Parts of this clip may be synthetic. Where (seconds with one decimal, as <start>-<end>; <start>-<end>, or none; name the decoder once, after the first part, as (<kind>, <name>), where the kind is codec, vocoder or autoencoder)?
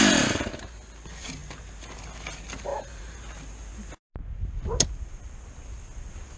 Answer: none